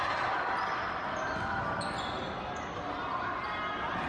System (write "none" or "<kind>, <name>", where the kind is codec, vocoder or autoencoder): none